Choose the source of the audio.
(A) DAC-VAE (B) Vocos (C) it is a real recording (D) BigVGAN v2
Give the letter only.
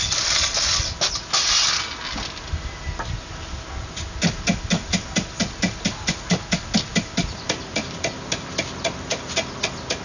C